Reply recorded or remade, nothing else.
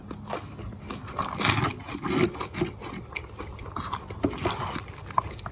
recorded